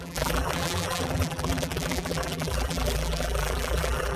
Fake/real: fake